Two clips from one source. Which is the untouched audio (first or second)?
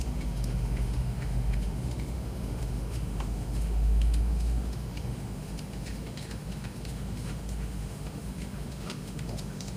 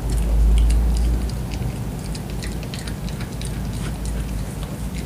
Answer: second